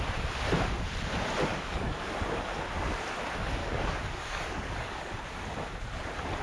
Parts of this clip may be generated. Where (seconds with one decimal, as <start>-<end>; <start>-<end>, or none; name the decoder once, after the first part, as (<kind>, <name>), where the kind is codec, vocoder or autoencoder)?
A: 1.5-2.1 (codec, DAC); 3.6-5.1